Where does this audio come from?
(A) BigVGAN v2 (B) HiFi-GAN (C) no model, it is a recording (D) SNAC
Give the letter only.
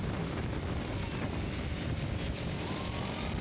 C